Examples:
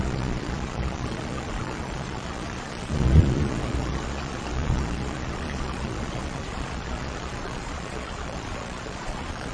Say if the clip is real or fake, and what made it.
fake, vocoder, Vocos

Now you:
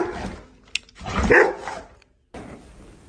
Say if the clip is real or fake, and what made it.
real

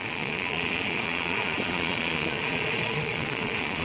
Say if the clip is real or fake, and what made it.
fake, vocoder, Vocos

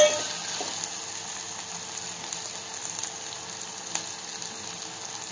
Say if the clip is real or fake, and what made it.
real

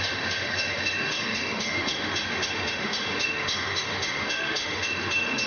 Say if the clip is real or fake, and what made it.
fake, autoencoder, DAC-VAE